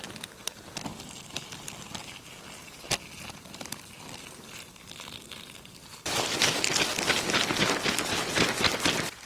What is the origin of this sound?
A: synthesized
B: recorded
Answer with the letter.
B